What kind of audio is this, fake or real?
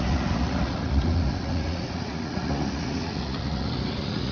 fake